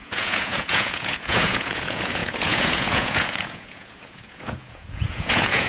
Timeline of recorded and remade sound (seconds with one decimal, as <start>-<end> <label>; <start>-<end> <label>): 0.0-5.7 remade